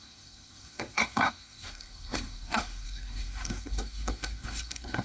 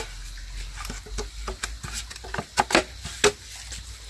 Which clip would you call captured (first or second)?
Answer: second